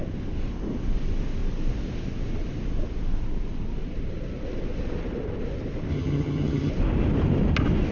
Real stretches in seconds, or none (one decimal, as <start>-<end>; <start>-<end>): 0.0-5.9; 6.7-7.9